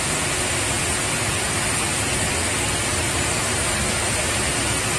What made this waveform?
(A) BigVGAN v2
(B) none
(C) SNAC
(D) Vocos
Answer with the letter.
B